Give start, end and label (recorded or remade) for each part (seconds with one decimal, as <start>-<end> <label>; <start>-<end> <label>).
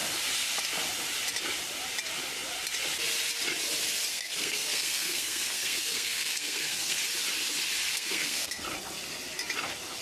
0.0-4.1 recorded; 4.1-7.0 remade; 7.0-7.9 recorded; 7.9-8.6 remade; 8.6-10.0 recorded